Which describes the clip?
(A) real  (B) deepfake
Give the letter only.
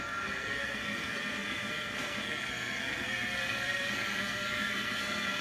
B